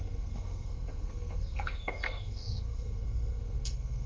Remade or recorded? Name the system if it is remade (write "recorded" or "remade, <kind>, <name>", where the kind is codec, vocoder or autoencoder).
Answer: remade, codec, SNAC